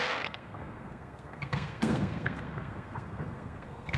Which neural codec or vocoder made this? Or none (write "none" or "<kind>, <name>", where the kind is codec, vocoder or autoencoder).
codec, SNAC